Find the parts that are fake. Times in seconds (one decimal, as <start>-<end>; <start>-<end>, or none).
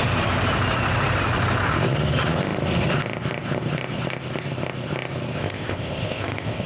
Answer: 5.4-6.7